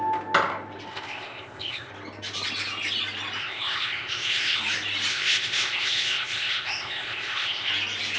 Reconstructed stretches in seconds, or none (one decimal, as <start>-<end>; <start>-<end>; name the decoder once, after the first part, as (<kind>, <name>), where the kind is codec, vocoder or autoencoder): 0.9-1.9 (codec, ZipCodec); 3.4-4.6; 5.1-7.7